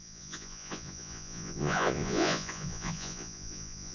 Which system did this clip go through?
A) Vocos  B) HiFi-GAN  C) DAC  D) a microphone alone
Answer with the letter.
A